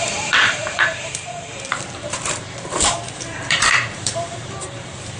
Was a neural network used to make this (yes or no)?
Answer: yes